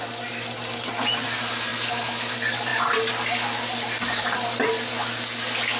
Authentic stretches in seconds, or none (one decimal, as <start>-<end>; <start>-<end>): 0.0-5.8

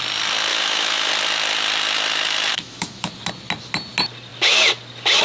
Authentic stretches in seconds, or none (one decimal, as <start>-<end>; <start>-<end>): 0.0-0.5; 1.1-2.5; 3.1-5.2